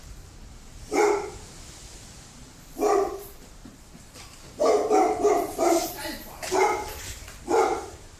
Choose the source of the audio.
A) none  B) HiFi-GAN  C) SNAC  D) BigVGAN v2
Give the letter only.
D